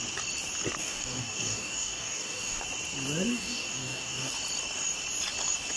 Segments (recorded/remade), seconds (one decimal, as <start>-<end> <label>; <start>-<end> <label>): 0.0-0.8 recorded; 0.8-2.6 remade; 2.6-3.3 recorded; 3.3-4.3 remade; 4.3-5.8 recorded